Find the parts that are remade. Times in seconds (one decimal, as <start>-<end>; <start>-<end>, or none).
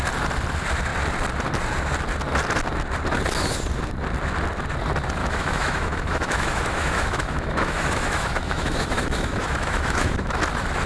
5.2-10.4